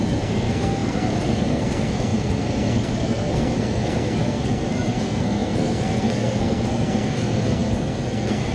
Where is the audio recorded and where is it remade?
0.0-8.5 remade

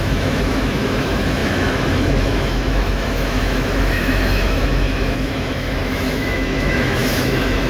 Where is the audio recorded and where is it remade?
0.0-7.7 remade

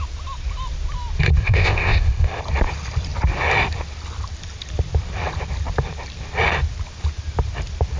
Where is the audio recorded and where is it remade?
0.0-1.4 recorded; 1.4-2.4 remade; 2.4-8.0 recorded

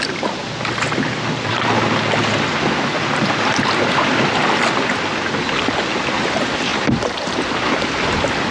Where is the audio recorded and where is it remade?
0.0-8.5 recorded

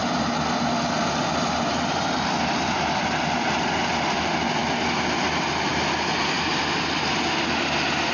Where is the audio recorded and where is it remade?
0.0-8.1 recorded

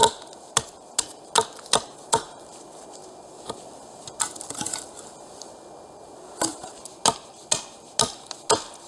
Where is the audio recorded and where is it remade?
0.0-8.9 recorded

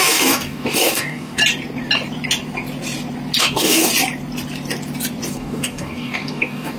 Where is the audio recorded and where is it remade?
0.0-1.4 remade; 1.4-3.4 recorded; 3.4-3.9 remade; 3.9-5.3 recorded; 5.3-6.8 remade

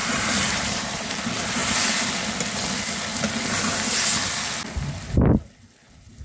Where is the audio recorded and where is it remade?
0.0-1.2 remade; 1.2-6.2 recorded